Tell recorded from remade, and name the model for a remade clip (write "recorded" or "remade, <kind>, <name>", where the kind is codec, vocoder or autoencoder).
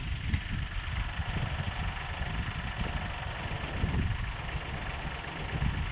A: recorded